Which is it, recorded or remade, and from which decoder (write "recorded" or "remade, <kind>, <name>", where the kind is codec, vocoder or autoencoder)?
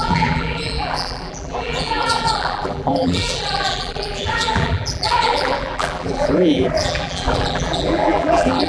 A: remade, vocoder, BigVGAN v2